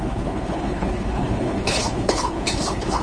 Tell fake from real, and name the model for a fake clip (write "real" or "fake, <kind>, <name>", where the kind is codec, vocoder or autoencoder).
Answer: fake, codec, HILCodec